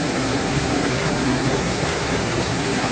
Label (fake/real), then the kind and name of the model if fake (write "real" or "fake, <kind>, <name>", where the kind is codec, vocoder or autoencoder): fake, codec, SNAC